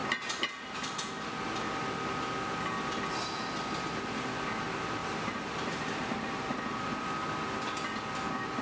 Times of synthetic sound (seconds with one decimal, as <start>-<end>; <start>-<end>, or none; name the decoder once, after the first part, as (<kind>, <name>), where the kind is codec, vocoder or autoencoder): 5.0-6.6 (vocoder, BigVGAN v2)